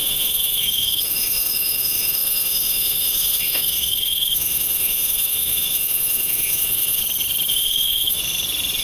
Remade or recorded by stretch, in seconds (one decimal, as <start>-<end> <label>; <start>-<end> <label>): 0.0-7.0 remade; 7.0-7.5 recorded; 7.5-8.2 remade; 8.2-8.8 recorded